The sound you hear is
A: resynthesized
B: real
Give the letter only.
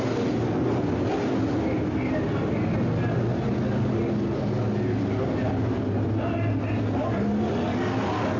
B